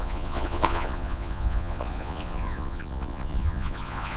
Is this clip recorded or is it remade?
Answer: remade